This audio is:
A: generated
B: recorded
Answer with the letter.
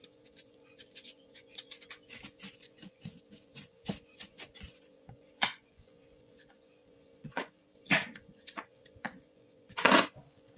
A